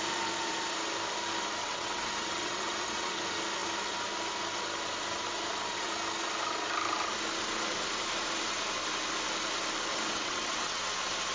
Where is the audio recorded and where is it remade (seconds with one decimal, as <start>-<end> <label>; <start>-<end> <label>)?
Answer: 0.0-1.6 recorded; 1.6-3.2 remade; 3.2-9.9 recorded; 9.9-10.8 remade; 10.8-11.3 recorded